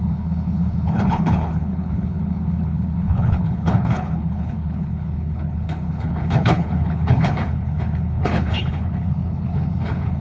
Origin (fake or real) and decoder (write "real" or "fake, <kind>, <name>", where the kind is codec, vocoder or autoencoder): fake, codec, HILCodec